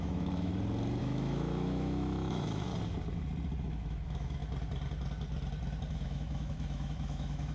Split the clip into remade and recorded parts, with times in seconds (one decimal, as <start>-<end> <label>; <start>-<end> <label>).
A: 0.0-0.5 remade; 0.5-1.0 recorded; 1.0-2.7 remade; 2.7-3.6 recorded; 3.6-4.4 remade; 4.4-5.9 recorded; 5.9-7.5 remade